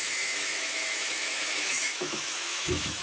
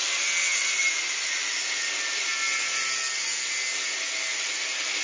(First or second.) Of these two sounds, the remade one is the first